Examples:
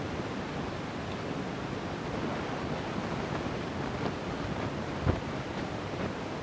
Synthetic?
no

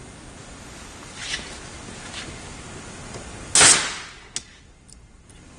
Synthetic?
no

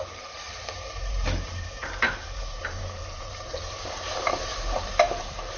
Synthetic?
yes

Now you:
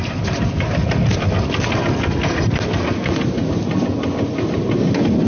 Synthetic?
no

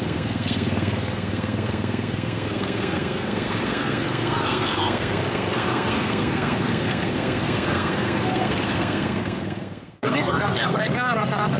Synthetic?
yes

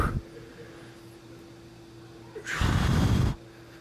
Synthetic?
no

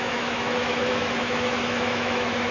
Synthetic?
yes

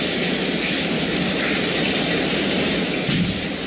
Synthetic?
no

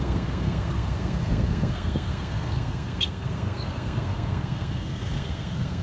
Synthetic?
yes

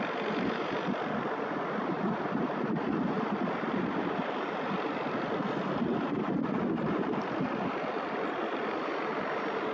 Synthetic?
no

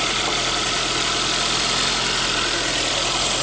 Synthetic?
no